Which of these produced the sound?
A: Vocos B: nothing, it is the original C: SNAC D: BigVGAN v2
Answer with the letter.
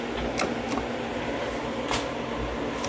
B